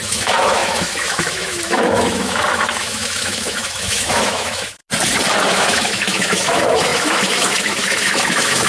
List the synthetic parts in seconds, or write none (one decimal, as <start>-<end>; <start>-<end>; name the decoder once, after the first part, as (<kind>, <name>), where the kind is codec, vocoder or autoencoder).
0.0-4.8 (autoencoder, DAC-VAE); 5.5-8.7